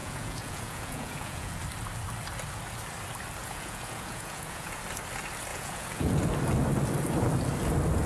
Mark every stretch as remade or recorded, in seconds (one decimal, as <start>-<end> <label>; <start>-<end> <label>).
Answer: 0.0-1.6 remade; 1.6-3.4 recorded; 3.4-4.8 remade; 4.8-5.5 recorded; 5.5-6.2 remade; 6.2-8.1 recorded